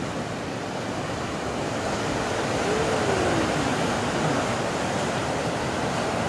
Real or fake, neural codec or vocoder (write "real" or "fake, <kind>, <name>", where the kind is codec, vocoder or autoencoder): real